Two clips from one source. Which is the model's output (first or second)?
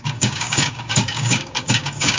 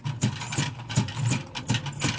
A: first